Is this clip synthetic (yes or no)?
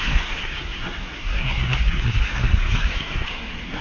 yes